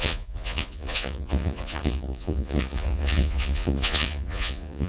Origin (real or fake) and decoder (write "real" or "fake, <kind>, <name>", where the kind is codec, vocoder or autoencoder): fake, vocoder, Vocos